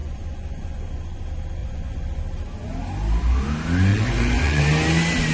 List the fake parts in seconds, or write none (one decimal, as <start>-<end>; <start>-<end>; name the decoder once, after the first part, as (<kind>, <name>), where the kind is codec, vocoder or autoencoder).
0.0-1.2 (vocoder, Vocos); 1.6-2.2; 3.9-4.6